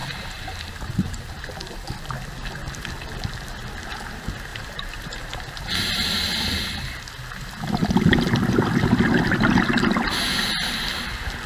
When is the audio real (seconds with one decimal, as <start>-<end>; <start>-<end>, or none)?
1.5-4.5; 5.9-11.5